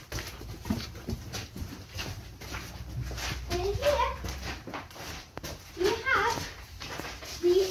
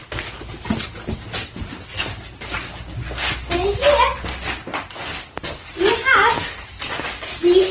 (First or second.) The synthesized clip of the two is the first